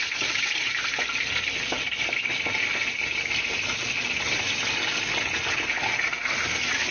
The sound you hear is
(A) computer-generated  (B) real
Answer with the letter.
B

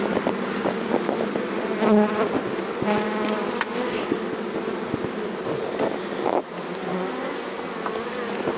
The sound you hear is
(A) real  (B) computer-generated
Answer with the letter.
A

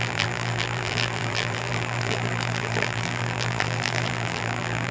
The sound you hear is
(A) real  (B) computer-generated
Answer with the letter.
B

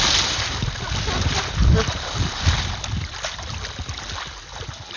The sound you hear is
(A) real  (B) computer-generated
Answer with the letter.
A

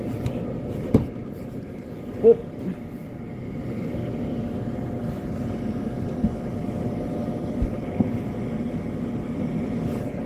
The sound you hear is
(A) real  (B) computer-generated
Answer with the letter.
A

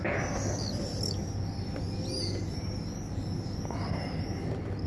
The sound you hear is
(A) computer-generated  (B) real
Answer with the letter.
B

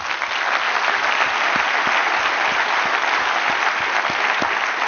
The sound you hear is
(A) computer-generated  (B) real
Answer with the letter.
B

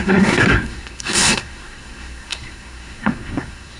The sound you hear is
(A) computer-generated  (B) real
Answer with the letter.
A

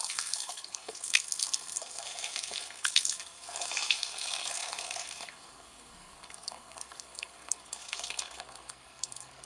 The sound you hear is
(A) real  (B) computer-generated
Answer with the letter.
B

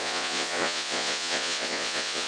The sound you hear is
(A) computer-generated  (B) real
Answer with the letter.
A